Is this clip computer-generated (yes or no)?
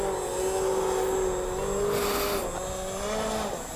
no